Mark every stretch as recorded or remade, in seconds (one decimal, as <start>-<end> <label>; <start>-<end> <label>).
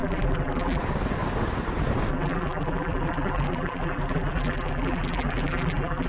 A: 0.0-0.8 remade; 0.8-2.1 recorded; 2.1-6.1 remade